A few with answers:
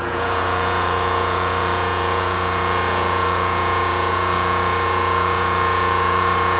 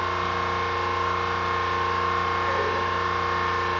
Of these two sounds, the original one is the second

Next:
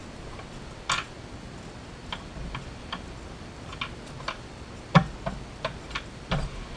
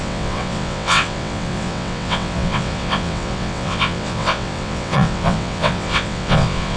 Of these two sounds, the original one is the first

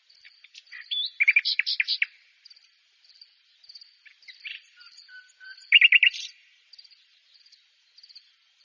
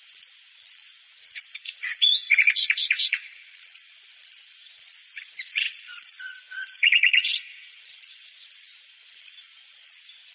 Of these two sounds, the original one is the first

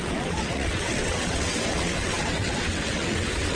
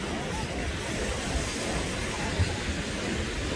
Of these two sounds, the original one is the second